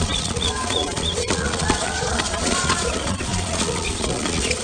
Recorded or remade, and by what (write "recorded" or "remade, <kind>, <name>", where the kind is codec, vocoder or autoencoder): remade, vocoder, Vocos